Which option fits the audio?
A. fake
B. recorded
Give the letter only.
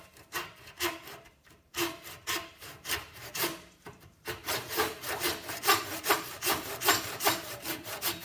A